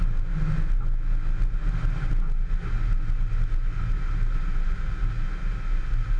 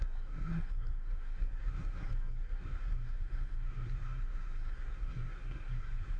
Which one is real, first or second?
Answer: first